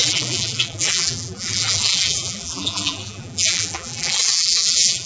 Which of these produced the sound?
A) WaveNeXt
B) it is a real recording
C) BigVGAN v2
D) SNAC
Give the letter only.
C